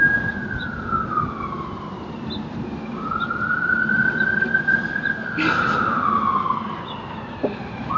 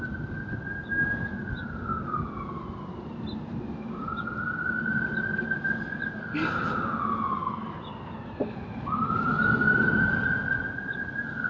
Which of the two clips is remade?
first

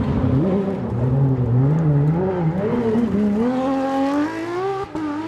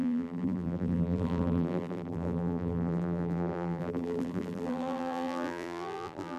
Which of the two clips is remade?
second